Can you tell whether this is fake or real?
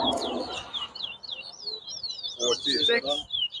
real